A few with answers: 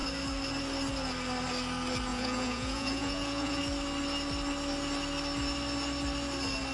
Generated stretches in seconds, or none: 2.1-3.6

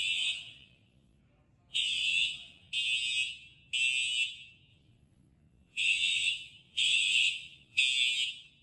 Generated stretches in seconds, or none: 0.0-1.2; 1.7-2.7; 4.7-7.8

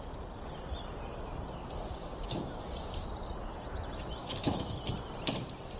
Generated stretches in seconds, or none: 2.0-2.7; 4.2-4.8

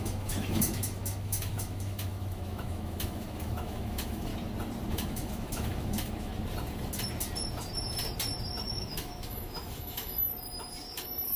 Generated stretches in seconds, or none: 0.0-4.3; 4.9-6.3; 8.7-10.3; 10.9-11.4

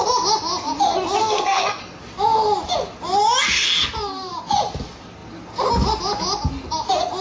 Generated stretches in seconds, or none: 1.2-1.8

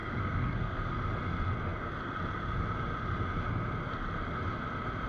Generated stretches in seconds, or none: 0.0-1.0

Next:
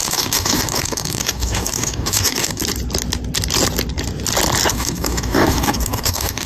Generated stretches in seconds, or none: 0.0-2.6; 4.7-6.5